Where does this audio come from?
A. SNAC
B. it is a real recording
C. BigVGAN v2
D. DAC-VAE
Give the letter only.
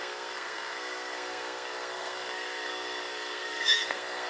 A